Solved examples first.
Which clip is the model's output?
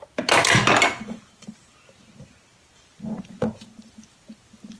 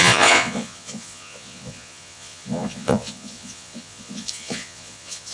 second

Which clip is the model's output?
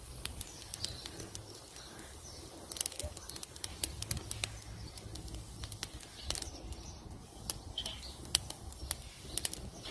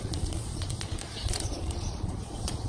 second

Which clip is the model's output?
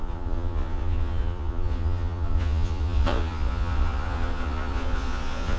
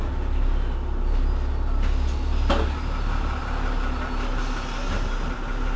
first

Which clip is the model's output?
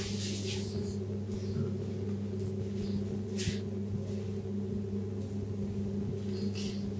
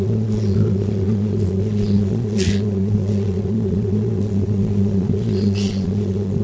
second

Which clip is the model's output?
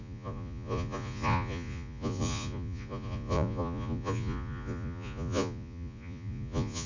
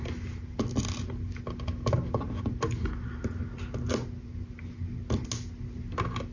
first